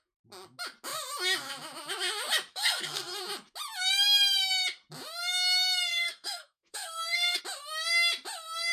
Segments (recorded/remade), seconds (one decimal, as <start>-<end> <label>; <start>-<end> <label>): 0.0-2.5 recorded; 2.5-3.2 remade; 3.2-5.9 recorded; 5.9-7.4 remade; 7.4-8.7 recorded